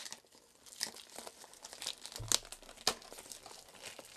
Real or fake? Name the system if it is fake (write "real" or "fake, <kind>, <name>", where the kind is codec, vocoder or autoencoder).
real